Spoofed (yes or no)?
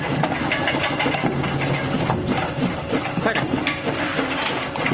no